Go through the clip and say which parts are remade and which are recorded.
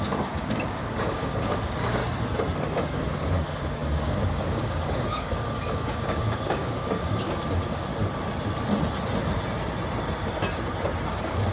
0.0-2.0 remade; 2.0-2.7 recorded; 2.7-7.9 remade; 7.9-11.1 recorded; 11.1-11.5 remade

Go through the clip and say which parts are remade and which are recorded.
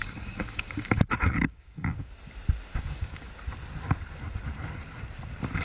0.0-2.1 remade; 2.1-2.7 recorded; 2.7-3.3 remade; 3.3-5.6 recorded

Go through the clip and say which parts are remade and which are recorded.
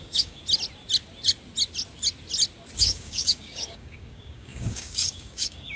0.0-0.4 remade; 0.4-2.8 recorded; 2.8-5.8 remade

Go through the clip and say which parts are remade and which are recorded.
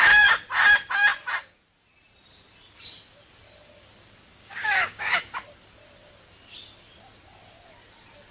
0.0-4.3 recorded; 4.3-5.2 remade; 5.2-8.3 recorded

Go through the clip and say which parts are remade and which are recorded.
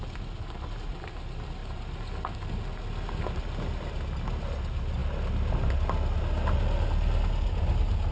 0.0-8.1 recorded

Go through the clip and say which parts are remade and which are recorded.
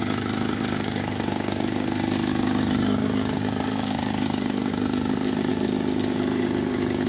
0.0-7.1 remade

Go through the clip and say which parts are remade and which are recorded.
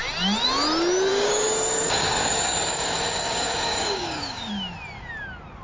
0.0-1.1 recorded; 1.1-4.5 remade; 4.5-5.6 recorded